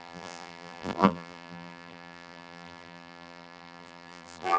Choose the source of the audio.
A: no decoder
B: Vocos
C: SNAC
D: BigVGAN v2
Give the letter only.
D